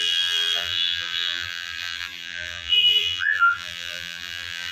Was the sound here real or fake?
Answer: fake